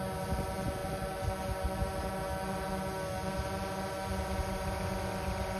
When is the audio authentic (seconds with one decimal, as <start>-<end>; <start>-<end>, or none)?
0.0-5.6